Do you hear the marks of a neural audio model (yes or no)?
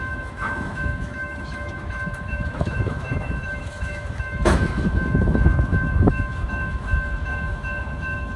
yes